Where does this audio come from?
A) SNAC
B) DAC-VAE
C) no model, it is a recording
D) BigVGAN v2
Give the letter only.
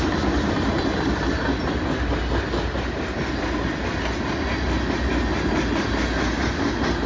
C